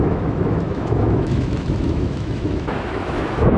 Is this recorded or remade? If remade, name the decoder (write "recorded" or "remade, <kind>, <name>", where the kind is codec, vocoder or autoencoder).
remade, autoencoder, DAC-VAE